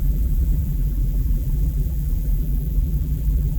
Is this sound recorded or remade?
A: remade